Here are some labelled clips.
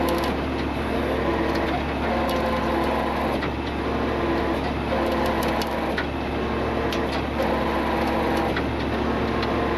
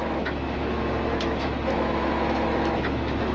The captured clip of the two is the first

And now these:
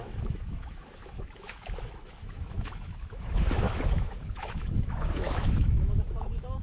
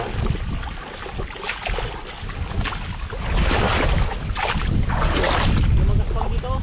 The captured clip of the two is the second